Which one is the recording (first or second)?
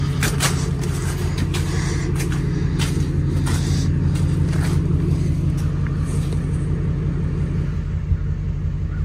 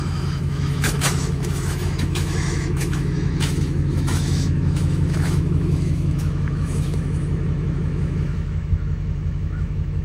first